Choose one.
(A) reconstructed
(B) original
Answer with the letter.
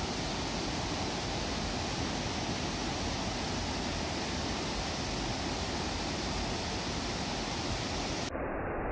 B